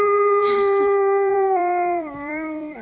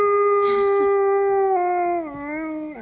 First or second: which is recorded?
second